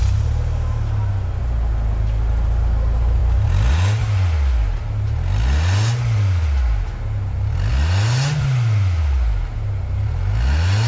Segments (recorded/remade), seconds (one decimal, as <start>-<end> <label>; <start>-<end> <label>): 0.0-10.9 recorded